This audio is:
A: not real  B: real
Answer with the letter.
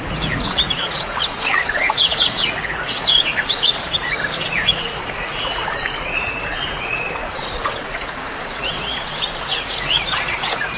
A